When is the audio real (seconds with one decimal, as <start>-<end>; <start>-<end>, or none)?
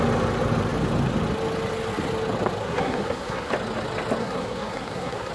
0.0-2.6; 3.5-4.2